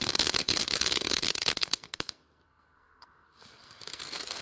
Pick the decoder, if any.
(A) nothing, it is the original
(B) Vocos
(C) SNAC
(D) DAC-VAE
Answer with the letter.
C